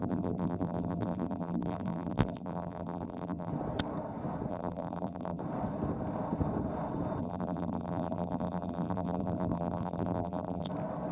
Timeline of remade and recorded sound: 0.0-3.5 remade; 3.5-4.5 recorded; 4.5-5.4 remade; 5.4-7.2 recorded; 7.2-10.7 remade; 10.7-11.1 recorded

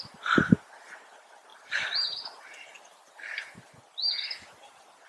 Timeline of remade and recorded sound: 0.0-1.5 recorded; 1.5-3.1 remade; 3.1-5.1 recorded

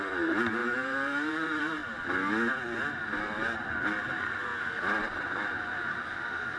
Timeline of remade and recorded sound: 0.0-1.8 remade; 1.8-3.2 recorded; 3.2-4.5 remade; 4.5-5.2 recorded; 5.2-6.6 remade

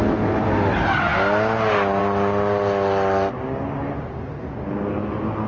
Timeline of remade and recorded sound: 0.0-5.5 recorded

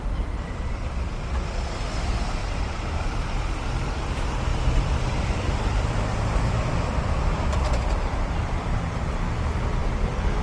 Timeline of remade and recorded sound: 0.0-2.4 recorded; 2.4-3.5 remade; 3.5-4.5 recorded; 4.5-8.8 remade; 8.8-10.4 recorded